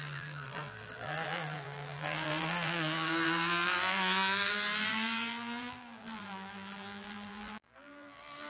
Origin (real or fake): fake